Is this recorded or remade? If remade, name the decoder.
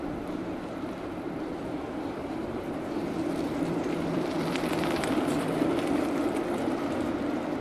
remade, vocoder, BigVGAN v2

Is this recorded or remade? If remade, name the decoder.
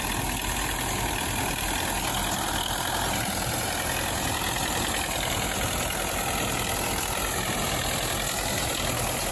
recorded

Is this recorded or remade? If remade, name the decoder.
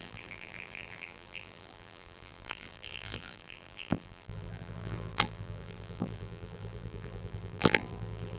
remade, vocoder, BigVGAN v2